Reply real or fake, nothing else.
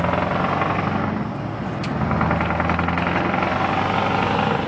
real